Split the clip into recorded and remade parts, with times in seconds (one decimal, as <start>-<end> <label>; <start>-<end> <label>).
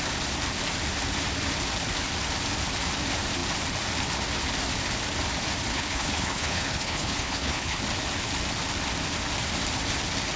0.0-5.7 recorded; 5.7-7.8 remade; 7.8-10.4 recorded